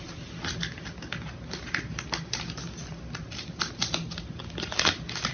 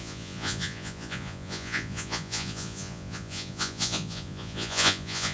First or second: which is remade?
second